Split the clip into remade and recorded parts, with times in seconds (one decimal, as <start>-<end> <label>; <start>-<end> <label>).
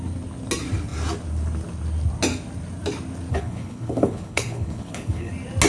0.0-3.3 recorded; 3.3-5.3 remade; 5.3-5.7 recorded